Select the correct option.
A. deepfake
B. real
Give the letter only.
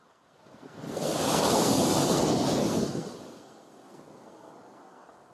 A